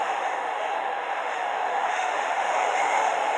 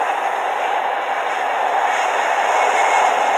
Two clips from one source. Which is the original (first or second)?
second